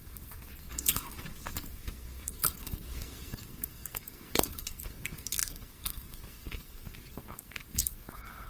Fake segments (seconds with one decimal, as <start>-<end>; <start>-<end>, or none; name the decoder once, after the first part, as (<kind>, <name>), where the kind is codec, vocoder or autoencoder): 0.0-8.5 (codec, SNAC)